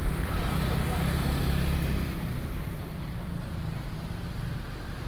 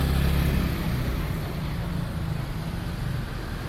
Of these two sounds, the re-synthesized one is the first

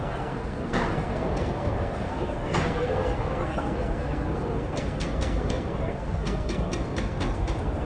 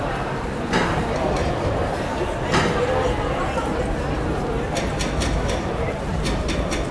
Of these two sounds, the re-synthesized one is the first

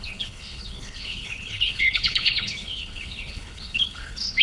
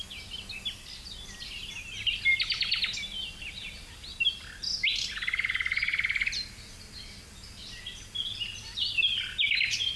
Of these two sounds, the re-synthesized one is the first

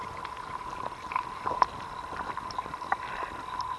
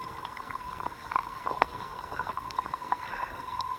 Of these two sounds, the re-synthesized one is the second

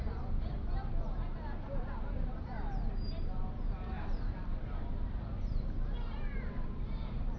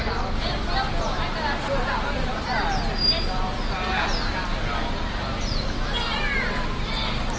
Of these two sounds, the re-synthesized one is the first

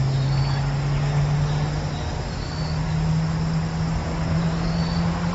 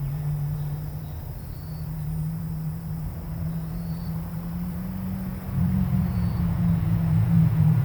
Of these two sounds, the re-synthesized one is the second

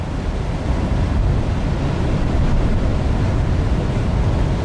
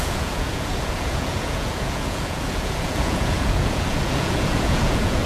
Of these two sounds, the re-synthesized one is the second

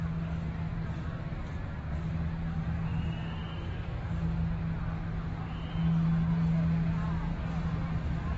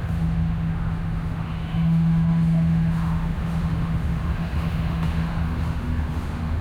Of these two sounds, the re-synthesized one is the second